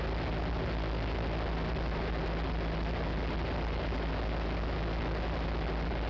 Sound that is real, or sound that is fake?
real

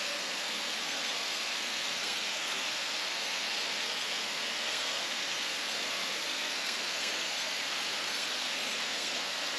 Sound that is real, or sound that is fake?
fake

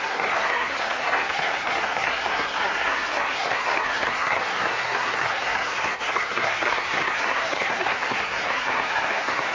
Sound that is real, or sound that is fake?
fake